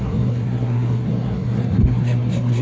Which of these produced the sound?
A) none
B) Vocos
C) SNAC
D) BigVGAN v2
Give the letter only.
C